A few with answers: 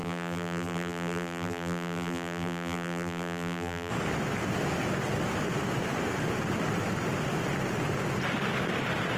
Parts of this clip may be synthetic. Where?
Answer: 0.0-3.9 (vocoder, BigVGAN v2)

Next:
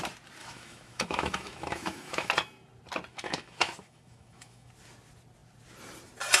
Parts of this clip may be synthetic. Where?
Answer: 0.4-2.3 (autoencoder, DAC-VAE); 3.1-4.7

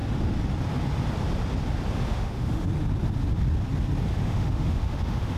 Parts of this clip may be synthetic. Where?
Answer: 2.1-2.7 (autoencoder, DAC-VAE); 4.1-5.4